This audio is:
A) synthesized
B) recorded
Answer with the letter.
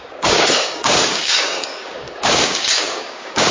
A